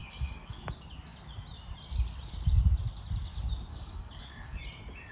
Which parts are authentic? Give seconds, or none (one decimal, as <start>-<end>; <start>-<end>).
0.7-3.7; 4.6-5.1